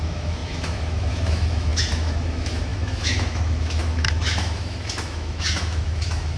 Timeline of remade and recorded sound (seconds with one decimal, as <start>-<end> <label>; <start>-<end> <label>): 0.0-6.4 remade